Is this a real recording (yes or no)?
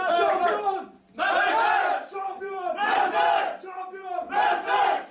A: yes